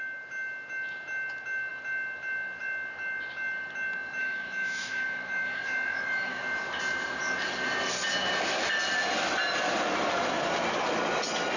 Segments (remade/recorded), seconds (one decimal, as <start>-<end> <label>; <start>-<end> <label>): 0.0-4.2 recorded; 4.2-6.4 remade; 6.4-11.6 recorded

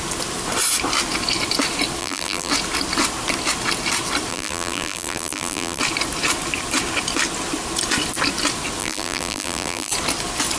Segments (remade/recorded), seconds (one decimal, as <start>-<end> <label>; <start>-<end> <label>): 0.0-2.0 recorded; 2.0-2.5 remade; 2.5-4.3 recorded; 4.3-5.8 remade; 5.8-8.8 recorded; 8.8-9.9 remade; 9.9-10.6 recorded

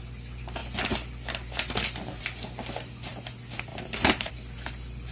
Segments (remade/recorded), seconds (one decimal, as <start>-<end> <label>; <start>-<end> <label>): 0.0-3.7 recorded; 3.7-4.3 remade; 4.3-5.1 recorded

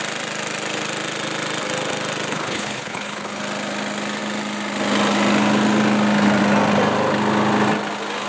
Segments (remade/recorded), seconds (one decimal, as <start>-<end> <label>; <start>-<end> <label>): 0.0-2.3 recorded; 2.3-3.4 remade; 3.4-8.3 recorded

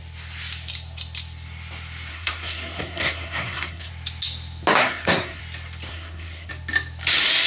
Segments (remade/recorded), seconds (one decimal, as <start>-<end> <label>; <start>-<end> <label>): 0.0-2.1 recorded; 2.1-3.9 remade; 3.9-4.8 recorded; 4.8-5.4 remade; 5.4-5.9 recorded; 5.9-6.5 remade; 6.5-7.5 recorded

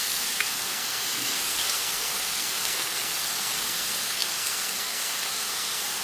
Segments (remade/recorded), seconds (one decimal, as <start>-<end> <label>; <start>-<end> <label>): 0.0-6.0 remade

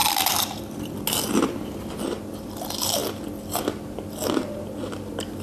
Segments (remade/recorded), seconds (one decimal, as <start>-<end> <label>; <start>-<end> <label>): 0.0-5.4 recorded